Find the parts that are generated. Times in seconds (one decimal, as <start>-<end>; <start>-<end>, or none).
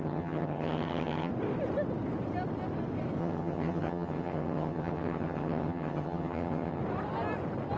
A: 0.0-1.3; 3.2-6.8